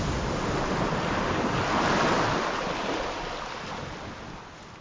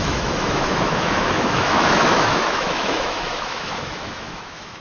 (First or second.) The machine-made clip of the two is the second